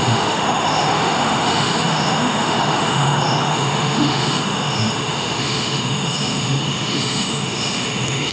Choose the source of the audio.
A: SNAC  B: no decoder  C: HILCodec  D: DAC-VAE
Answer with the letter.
D